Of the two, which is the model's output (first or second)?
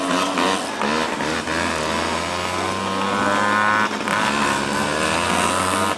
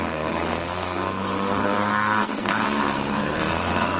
second